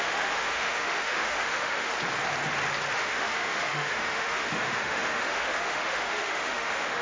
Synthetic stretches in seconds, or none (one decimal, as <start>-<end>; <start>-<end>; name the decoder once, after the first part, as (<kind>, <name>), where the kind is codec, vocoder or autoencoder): 0.0-1.9 (autoencoder, DAC-VAE); 2.9-7.0